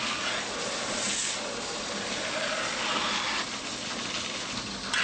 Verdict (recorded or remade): recorded